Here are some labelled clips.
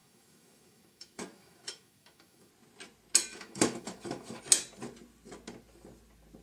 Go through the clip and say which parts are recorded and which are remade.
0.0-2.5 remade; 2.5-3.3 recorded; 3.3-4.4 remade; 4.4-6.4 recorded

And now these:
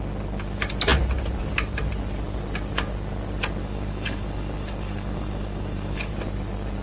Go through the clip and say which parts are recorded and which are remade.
0.0-3.6 recorded; 3.6-6.1 remade; 6.1-6.8 recorded

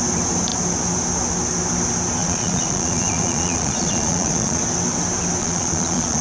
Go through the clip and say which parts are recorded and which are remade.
0.0-2.2 recorded; 2.2-4.6 remade; 4.6-5.4 recorded; 5.4-6.2 remade

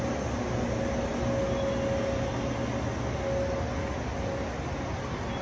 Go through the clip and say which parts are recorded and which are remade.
0.0-5.4 recorded

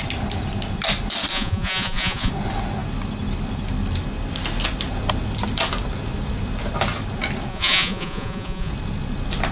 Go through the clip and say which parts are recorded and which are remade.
0.0-1.3 recorded; 1.3-2.3 remade; 2.3-7.5 recorded; 7.5-8.7 remade; 8.7-9.5 recorded

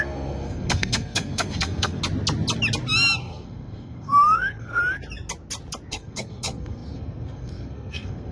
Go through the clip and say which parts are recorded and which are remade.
0.0-2.0 remade; 2.0-3.2 recorded; 3.2-4.8 remade; 4.8-5.9 recorded; 5.9-8.3 remade